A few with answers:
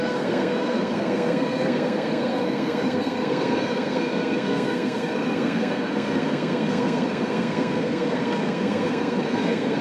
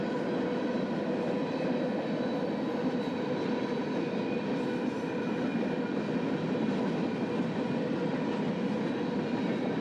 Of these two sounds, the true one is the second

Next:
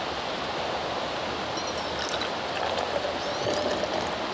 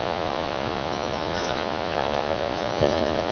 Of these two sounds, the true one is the first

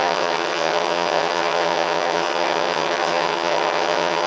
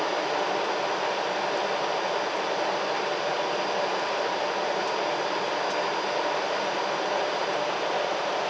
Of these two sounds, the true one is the second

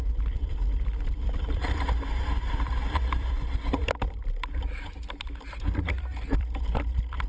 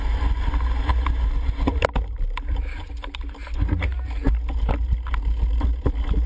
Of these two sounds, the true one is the second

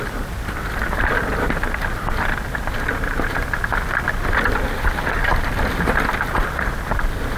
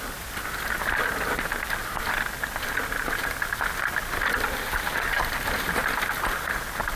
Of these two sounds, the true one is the second